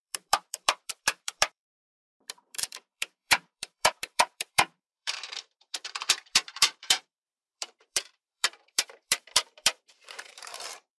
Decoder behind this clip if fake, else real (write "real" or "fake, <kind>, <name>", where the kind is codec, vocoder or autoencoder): fake, vocoder, BigVGAN v2